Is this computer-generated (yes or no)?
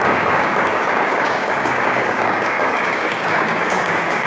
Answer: yes